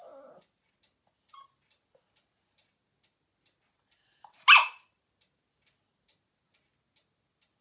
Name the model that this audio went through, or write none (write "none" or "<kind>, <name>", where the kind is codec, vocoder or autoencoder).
none